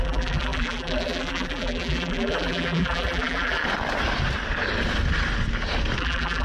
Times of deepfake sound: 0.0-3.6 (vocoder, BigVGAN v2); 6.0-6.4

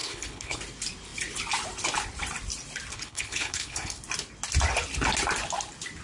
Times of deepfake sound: 0.0-0.6 (codec, HILCodec); 2.9-4.0

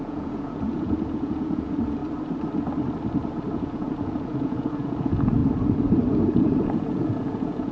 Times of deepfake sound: 0.0-2.0 (vocoder, Vocos); 3.5-5.4; 6.1-7.7

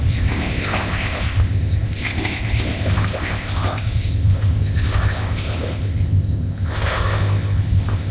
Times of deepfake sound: 0.0-8.1 (codec, ZipCodec)